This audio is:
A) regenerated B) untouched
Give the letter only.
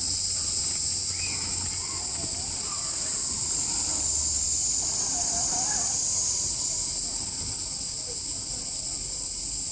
B